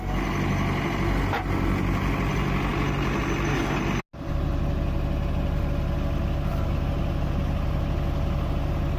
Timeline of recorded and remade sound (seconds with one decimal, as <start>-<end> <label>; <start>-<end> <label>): 0.0-9.0 recorded